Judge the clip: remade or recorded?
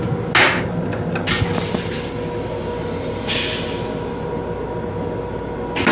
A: recorded